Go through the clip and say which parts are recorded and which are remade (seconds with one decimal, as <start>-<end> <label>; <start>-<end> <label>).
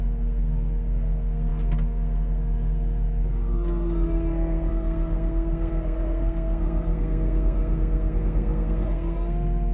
0.0-9.7 remade